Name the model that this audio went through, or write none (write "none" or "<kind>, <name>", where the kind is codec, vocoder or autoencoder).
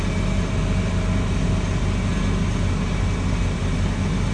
none